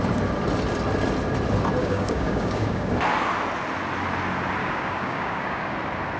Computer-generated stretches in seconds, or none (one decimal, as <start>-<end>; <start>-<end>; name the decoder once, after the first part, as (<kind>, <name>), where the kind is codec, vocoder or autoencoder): 1.8-2.9 (codec, DAC); 4.6-5.7